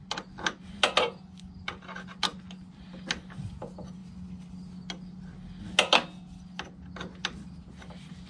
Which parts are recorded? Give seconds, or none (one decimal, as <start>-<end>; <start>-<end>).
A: 0.0-8.3